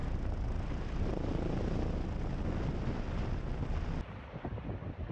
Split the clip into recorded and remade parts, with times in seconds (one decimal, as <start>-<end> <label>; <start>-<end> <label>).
0.0-5.1 recorded